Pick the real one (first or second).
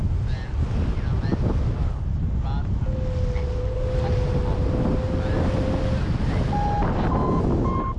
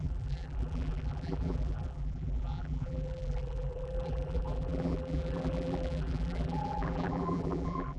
first